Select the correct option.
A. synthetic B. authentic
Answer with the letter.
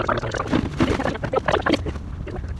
A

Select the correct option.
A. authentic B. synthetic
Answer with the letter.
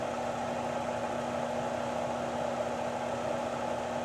A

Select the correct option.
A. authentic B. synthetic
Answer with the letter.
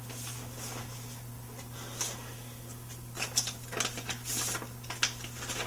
A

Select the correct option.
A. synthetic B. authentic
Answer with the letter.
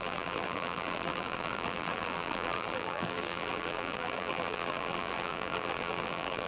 A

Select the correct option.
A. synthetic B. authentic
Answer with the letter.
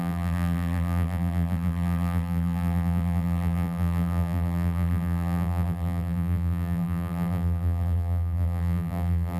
A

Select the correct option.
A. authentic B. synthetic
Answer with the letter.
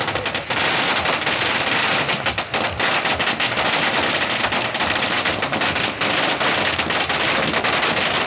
A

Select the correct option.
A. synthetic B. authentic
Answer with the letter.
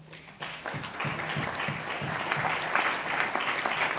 B